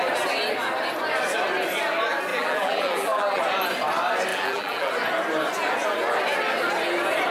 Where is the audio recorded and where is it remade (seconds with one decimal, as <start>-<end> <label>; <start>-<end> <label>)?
0.0-2.3 recorded; 2.3-3.4 remade; 3.4-4.3 recorded; 4.3-4.9 remade; 4.9-7.3 recorded

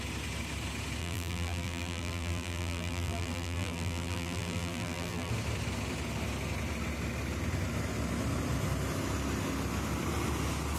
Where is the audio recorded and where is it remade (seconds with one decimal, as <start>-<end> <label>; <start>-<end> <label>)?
0.0-1.0 recorded; 1.0-5.3 remade; 5.3-10.8 recorded

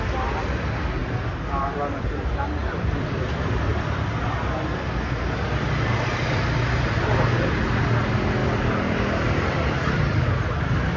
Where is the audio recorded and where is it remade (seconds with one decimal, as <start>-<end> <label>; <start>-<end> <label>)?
0.0-2.6 recorded; 2.6-4.1 remade; 4.1-8.4 recorded; 8.4-10.6 remade; 10.6-11.0 recorded

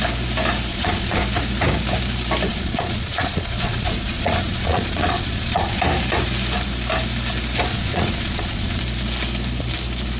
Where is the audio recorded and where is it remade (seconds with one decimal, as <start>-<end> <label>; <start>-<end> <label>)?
0.0-0.7 recorded; 0.7-1.2 remade; 1.2-2.5 recorded; 2.5-5.8 remade; 5.8-7.7 recorded; 7.7-8.8 remade; 8.8-10.2 recorded

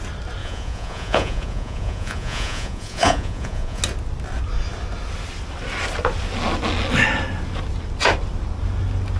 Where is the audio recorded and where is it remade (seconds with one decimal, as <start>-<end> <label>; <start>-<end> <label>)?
0.0-0.4 recorded; 0.4-3.8 remade; 3.8-9.2 recorded

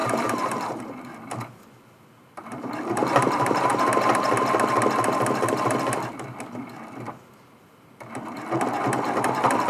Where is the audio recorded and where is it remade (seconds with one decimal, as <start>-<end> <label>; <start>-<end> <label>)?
0.0-0.8 remade; 0.8-2.4 recorded; 2.4-3.7 remade; 3.7-9.7 recorded

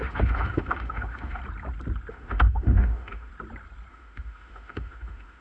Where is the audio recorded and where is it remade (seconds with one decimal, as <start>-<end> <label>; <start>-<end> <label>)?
0.0-1.4 remade; 1.4-2.1 recorded; 2.1-3.3 remade; 3.3-3.9 recorded; 3.9-5.4 remade